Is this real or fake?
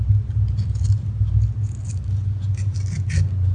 real